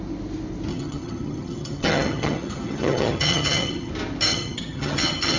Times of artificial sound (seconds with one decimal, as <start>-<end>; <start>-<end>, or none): 0.7-3.9; 4.3-5.4

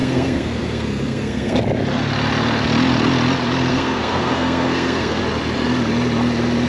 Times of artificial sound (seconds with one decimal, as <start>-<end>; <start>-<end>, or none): 0.0-1.6; 3.7-5.2

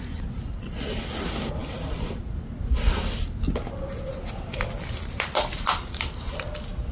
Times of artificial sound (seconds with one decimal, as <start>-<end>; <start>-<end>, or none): none